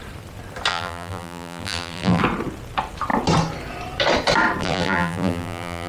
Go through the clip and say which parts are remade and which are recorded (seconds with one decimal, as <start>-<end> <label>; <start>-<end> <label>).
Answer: 0.0-0.7 recorded; 0.7-2.2 remade; 2.2-4.6 recorded; 4.6-5.9 remade